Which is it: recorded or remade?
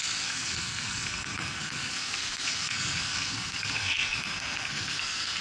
remade